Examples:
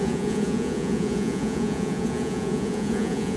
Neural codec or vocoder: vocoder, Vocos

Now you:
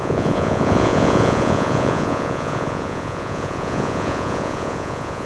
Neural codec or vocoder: vocoder, Vocos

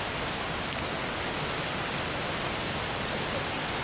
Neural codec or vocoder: none